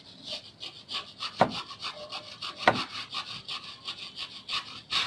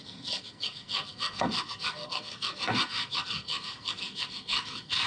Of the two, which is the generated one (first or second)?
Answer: second